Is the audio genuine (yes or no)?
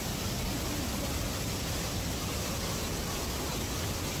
yes